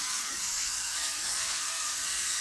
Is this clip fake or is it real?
fake